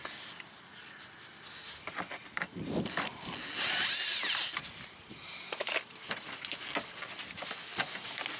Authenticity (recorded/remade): recorded